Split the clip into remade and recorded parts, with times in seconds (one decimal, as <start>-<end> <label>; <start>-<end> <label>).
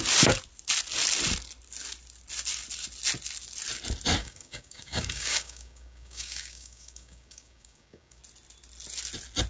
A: 0.0-4.2 recorded; 4.2-8.2 remade; 8.2-9.5 recorded